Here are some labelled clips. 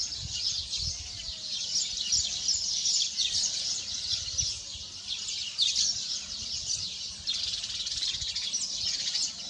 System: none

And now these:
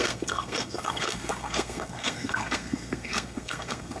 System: codec, SNAC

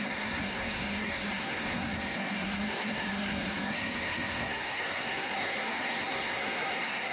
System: codec, SNAC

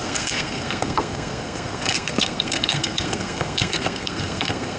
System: codec, SNAC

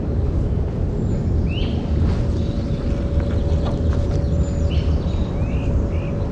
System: none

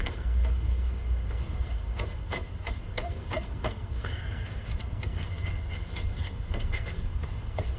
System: codec, SNAC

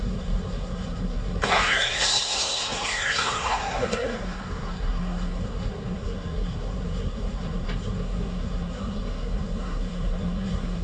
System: codec, SNAC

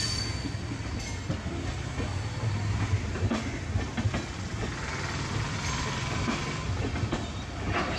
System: none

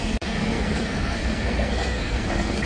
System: codec, SNAC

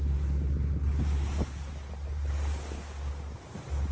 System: none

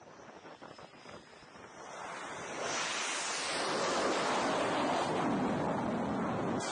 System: none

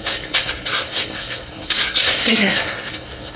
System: codec, SNAC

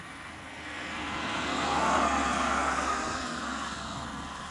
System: codec, SNAC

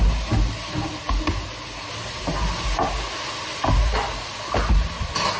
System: none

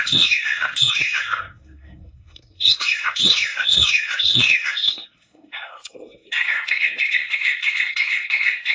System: codec, SNAC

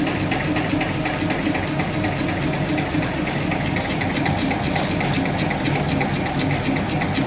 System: none